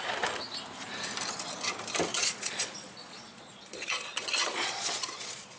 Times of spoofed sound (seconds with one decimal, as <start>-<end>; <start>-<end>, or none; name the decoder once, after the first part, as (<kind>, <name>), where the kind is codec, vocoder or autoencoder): 2.1-5.6 (vocoder, Vocos)